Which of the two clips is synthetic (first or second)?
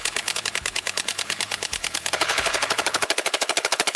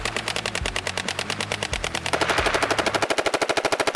first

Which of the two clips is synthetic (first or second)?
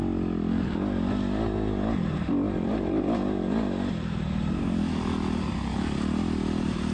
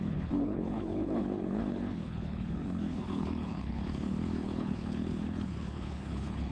second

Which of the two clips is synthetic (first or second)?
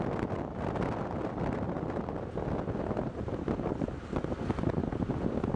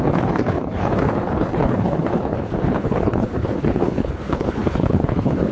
second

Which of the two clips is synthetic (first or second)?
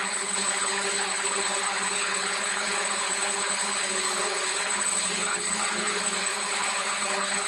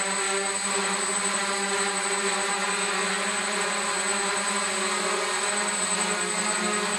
first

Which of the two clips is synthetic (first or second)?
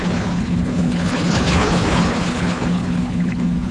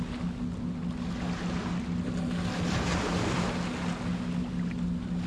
first